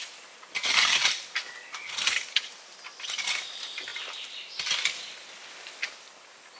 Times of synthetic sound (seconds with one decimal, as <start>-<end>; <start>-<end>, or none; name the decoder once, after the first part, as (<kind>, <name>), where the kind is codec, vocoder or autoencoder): 0.0-3.9 (vocoder, BigVGAN v2); 4.5-6.6